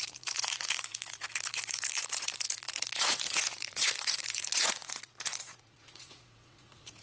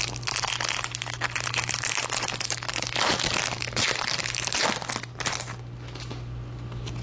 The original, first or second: second